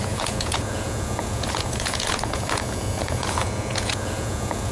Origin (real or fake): fake